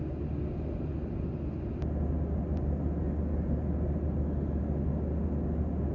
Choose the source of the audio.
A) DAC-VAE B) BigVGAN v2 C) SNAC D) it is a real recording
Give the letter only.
D